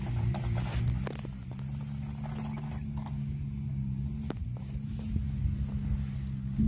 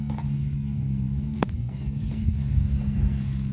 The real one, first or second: first